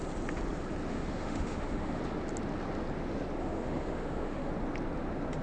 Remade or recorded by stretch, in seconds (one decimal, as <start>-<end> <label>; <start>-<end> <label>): 0.0-0.9 recorded; 0.9-2.0 remade; 2.0-3.4 recorded; 3.4-4.5 remade; 4.5-5.4 recorded